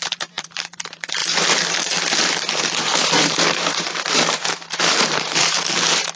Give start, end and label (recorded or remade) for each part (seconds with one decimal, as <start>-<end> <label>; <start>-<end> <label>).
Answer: 0.0-6.2 remade